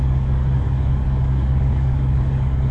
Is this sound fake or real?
fake